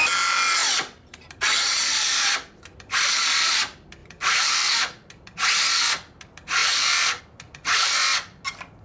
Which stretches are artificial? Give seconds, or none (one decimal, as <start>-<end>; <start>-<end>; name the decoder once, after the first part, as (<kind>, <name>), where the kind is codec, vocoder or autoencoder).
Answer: 0.6-1.8 (vocoder, BigVGAN v2); 4.0-5.1; 6.6-7.2

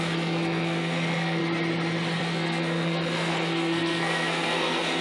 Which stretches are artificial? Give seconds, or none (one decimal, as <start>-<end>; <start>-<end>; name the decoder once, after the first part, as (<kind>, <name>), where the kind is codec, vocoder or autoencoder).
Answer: 0.0-1.4 (codec, SNAC); 2.2-5.0

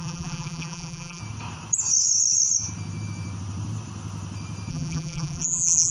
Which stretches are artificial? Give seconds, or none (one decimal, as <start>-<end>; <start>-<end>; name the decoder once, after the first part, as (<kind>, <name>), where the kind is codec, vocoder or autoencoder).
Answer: 0.0-1.2 (vocoder, BigVGAN v2); 4.7-5.9

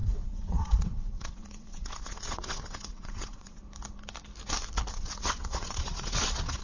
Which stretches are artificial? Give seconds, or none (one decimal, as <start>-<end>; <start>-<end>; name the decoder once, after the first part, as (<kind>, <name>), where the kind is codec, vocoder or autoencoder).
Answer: 0.0-3.6 (vocoder, WaveNeXt); 4.9-6.6